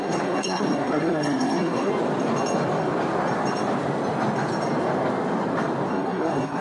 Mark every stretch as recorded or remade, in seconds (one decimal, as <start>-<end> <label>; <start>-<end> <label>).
0.0-1.9 remade; 1.9-5.9 recorded; 5.9-6.6 remade